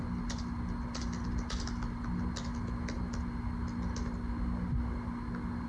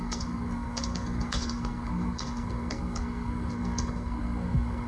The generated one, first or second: second